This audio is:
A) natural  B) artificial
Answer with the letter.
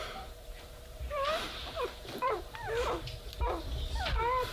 B